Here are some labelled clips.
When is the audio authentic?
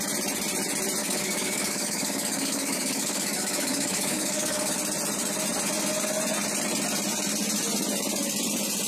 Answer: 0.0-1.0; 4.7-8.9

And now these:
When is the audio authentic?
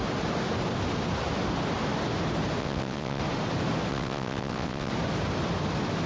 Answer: 0.0-2.6; 3.2-3.9; 4.9-6.1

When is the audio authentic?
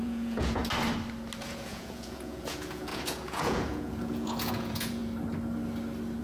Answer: 0.6-1.4; 5.0-6.2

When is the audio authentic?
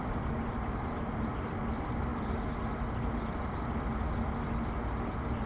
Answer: 0.0-5.5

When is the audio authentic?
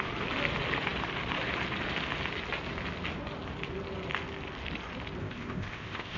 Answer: 0.0-5.2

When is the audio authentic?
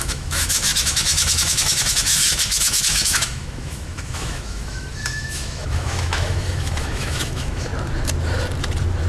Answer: 7.7-9.1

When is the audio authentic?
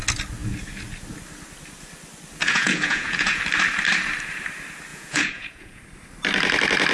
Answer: 0.0-2.4; 3.4-4.9; 5.8-6.9